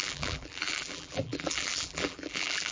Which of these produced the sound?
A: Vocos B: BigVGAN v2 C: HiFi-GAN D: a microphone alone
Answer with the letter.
B